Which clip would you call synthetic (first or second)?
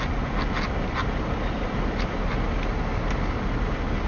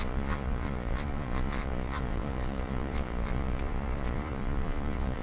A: second